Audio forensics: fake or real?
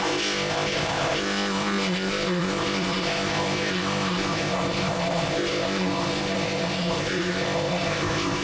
fake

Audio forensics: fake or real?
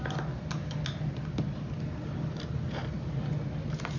real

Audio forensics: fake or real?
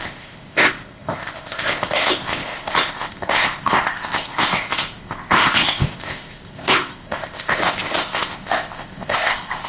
fake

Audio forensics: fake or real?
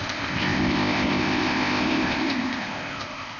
fake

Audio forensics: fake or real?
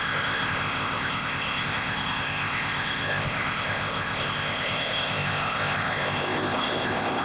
fake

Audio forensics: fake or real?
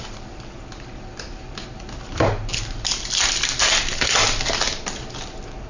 real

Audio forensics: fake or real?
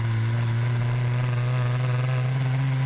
real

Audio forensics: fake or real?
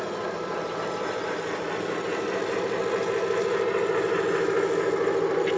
real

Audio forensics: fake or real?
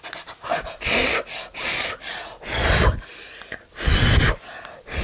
real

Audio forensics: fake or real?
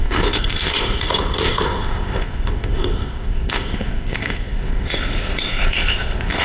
fake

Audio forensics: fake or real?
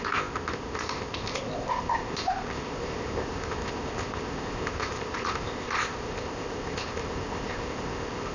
fake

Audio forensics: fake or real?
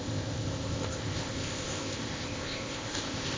fake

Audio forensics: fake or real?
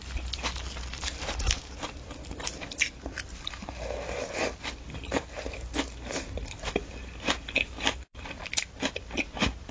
real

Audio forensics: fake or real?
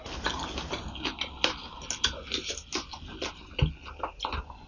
real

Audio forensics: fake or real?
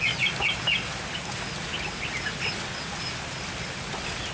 real